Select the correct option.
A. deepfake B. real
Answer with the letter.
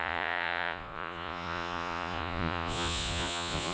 A